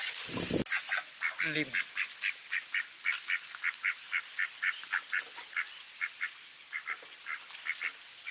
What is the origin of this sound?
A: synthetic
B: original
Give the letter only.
B